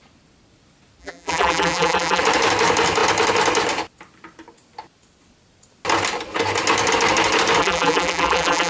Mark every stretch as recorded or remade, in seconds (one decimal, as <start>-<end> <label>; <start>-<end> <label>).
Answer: 0.0-1.0 recorded; 1.0-2.2 remade; 2.2-7.6 recorded; 7.6-8.7 remade